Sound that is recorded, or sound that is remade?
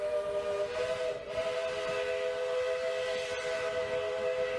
recorded